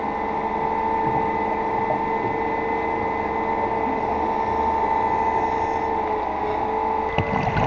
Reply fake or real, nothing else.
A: real